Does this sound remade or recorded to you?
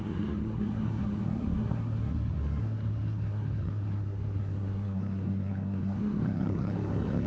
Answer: remade